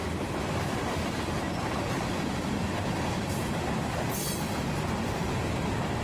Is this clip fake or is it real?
fake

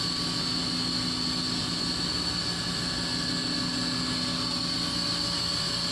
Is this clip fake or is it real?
real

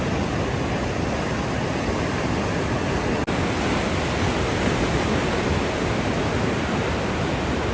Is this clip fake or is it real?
real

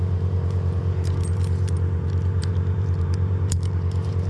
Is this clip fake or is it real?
fake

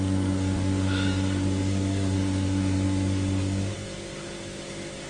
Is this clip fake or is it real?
fake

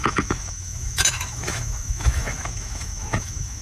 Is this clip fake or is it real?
fake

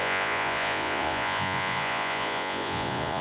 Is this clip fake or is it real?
fake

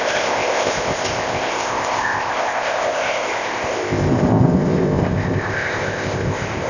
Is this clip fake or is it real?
fake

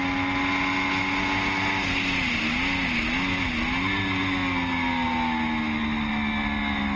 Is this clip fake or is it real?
real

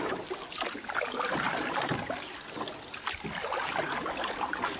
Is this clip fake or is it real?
real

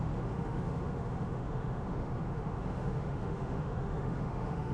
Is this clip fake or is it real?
fake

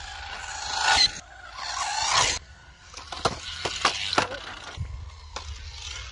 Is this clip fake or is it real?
real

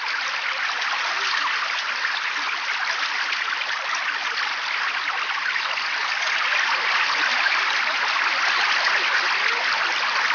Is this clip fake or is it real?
real